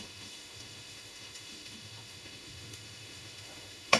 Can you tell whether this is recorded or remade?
remade